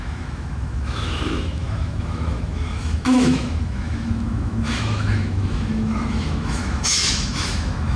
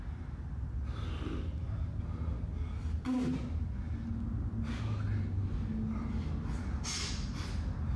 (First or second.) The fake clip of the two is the first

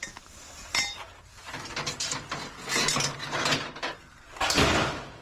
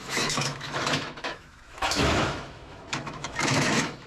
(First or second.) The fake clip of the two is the second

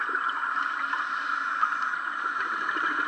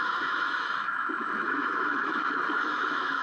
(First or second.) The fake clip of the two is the second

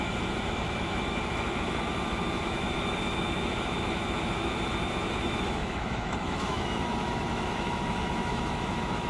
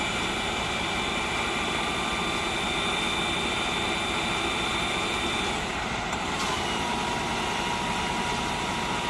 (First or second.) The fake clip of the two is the first